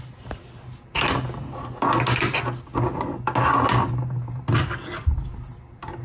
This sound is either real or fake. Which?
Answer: real